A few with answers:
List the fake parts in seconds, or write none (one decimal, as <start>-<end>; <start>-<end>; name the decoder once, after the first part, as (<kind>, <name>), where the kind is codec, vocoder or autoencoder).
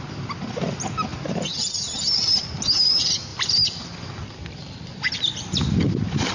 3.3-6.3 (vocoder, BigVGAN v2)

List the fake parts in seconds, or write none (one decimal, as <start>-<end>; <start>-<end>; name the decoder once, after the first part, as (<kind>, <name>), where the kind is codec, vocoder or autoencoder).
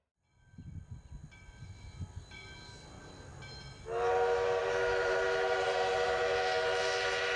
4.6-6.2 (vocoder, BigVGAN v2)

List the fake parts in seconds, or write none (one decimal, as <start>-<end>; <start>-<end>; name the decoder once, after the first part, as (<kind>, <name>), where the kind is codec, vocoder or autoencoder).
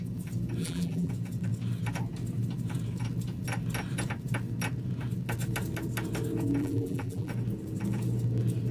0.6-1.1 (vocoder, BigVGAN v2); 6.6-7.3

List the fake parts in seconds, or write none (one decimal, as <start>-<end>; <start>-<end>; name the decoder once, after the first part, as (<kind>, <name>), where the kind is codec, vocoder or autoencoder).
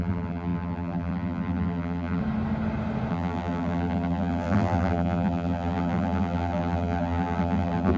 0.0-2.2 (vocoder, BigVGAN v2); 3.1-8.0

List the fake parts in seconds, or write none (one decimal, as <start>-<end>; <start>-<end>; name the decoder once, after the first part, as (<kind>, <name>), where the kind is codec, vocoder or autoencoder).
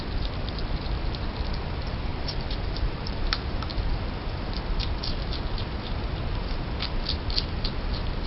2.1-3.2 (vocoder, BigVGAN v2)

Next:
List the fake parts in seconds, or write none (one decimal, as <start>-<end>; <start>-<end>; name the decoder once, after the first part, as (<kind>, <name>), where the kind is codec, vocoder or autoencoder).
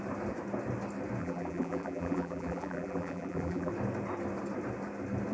1.2-3.7 (vocoder, BigVGAN v2)